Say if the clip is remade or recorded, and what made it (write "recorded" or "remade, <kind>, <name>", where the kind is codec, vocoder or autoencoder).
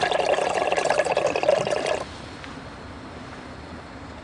recorded